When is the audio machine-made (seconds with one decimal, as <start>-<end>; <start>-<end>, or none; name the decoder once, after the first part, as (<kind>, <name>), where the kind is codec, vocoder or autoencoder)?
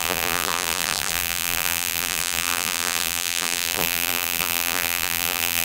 0.0-5.6 (vocoder, BigVGAN v2)